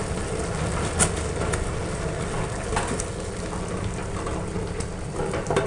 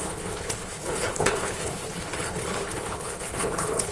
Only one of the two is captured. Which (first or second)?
first